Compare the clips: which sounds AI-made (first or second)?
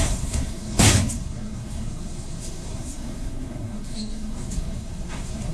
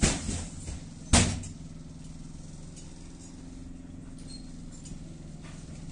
first